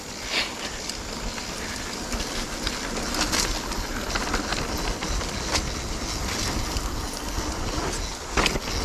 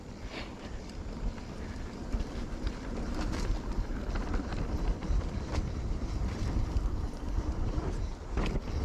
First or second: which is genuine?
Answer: first